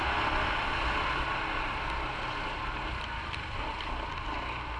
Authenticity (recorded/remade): recorded